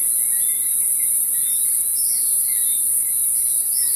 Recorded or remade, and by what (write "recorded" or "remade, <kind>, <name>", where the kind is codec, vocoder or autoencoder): recorded